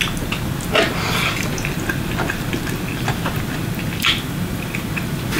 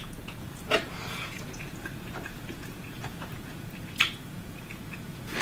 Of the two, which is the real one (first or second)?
first